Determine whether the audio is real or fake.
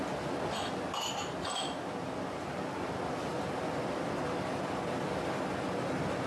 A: real